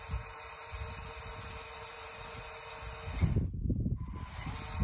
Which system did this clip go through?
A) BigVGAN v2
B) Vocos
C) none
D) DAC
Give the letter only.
C